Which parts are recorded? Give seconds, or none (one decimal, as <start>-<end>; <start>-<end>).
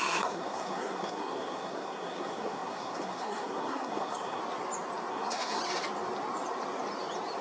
4.4-5.1; 5.6-7.4